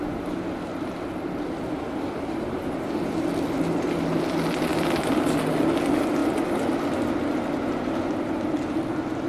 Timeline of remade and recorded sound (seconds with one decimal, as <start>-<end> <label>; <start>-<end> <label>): 0.0-4.7 recorded; 4.7-5.2 remade; 5.2-9.3 recorded

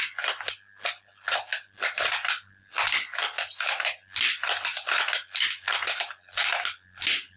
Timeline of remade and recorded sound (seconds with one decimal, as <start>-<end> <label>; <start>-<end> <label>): 0.0-7.4 recorded

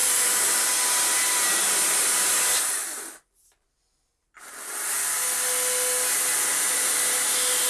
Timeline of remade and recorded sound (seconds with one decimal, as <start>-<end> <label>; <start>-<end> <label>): 0.0-0.7 remade; 0.7-6.5 recorded; 6.5-7.0 remade; 7.0-7.7 recorded